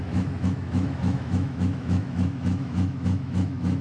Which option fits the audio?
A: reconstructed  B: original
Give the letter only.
A